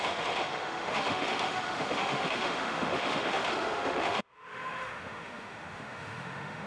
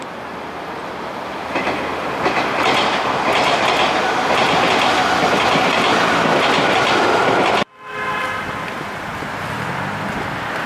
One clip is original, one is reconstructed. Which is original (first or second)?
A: second